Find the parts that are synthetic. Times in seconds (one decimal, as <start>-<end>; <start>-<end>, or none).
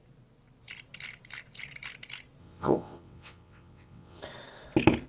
2.4-4.2